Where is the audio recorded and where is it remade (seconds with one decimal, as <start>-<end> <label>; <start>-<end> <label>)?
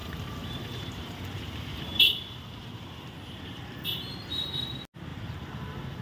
0.0-3.6 remade; 3.6-5.1 recorded; 5.1-6.0 remade